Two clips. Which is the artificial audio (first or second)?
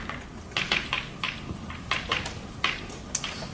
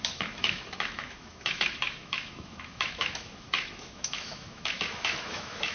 second